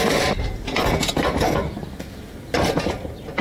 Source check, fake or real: real